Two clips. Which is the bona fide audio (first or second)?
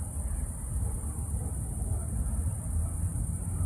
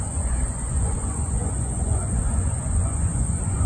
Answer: first